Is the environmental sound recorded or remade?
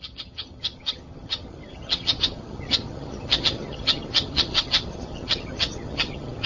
remade